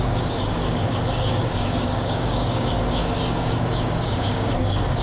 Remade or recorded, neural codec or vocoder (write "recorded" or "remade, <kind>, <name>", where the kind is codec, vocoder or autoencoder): remade, codec, DAC